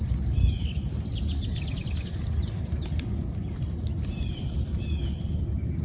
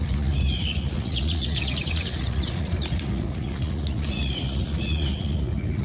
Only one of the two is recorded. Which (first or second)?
first